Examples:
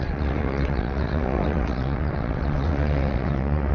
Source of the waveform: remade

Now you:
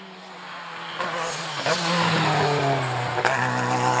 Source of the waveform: recorded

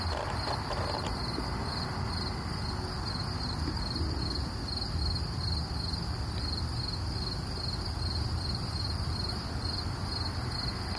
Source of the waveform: recorded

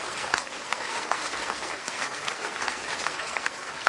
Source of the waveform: remade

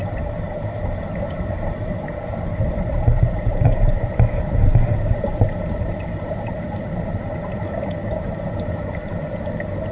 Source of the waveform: remade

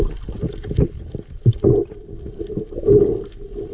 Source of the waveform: recorded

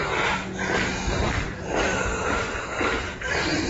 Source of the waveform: recorded